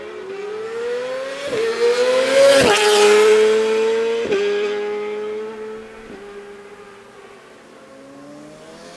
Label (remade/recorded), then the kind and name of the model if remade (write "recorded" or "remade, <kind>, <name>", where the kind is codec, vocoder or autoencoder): recorded